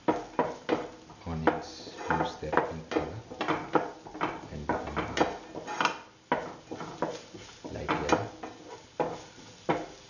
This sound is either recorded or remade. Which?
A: recorded